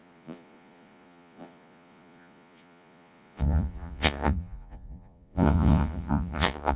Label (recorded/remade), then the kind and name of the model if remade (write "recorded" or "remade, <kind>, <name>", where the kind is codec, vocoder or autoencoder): remade, vocoder, Vocos